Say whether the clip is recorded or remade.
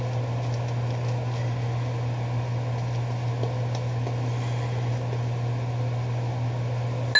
recorded